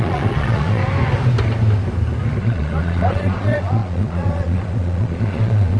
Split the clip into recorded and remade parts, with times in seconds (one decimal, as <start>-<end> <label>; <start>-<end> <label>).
0.0-0.8 remade; 0.8-2.4 recorded; 2.4-5.8 remade